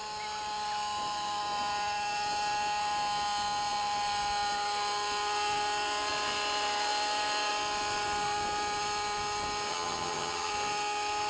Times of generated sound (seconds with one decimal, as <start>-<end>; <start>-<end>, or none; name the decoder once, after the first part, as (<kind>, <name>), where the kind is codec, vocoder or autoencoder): 9.7-10.5 (vocoder, HiFi-GAN)